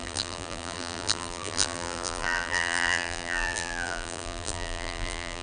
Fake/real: fake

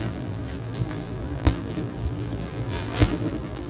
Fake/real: fake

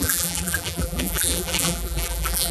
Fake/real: fake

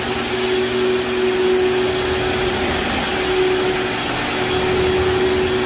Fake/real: real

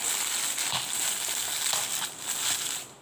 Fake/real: real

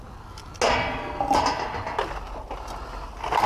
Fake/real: real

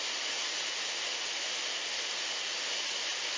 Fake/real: real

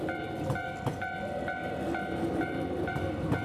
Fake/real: fake